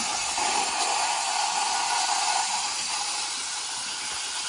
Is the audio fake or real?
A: real